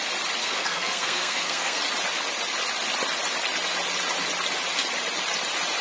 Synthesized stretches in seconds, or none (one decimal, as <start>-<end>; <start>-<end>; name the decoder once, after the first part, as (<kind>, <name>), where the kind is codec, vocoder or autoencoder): 0.4-1.8 (codec, SNAC)